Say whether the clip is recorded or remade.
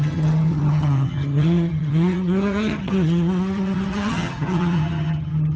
remade